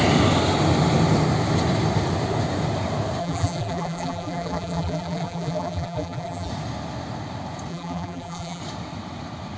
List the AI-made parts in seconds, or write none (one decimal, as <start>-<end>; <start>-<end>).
3.2-6.5; 7.7-8.6